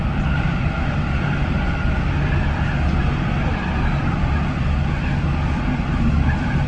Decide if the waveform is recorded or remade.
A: recorded